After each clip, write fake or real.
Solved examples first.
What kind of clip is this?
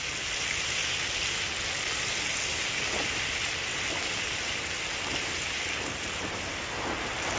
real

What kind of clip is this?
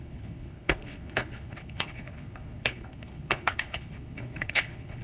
fake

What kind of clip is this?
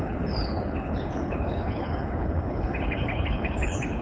fake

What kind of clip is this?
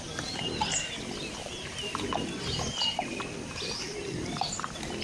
real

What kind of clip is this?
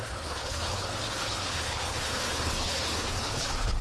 fake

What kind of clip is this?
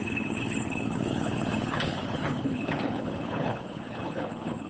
fake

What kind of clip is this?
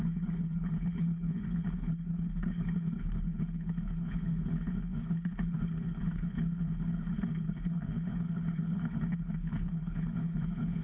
fake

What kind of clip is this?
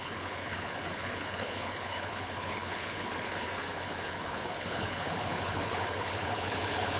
fake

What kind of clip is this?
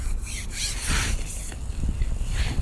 real